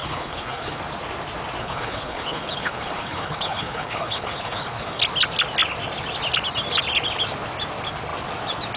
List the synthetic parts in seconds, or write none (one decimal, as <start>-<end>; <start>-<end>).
0.0-0.8; 1.6-5.0